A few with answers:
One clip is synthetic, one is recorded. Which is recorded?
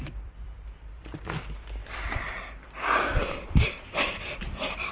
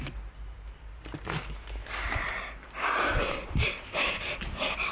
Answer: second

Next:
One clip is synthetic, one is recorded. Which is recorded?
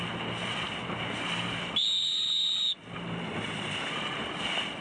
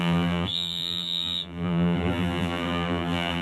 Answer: first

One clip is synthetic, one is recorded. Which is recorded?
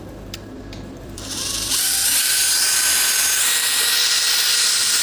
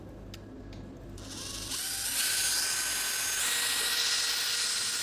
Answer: second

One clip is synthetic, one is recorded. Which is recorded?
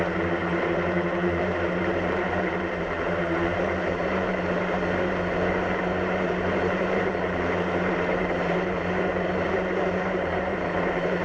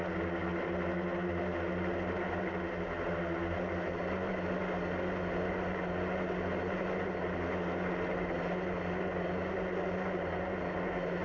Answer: second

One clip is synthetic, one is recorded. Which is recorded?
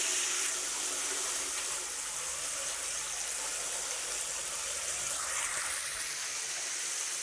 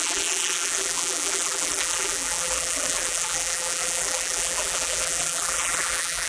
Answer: first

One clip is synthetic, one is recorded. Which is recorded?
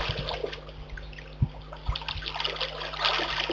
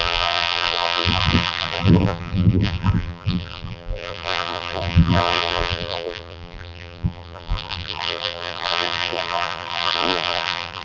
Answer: first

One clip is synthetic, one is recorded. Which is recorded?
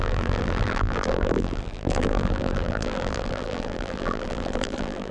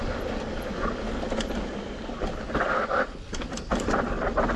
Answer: second